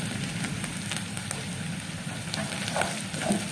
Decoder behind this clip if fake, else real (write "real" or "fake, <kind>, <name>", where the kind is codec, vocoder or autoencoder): real